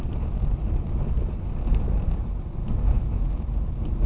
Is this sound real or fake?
real